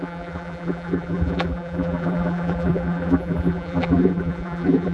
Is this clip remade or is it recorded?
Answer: remade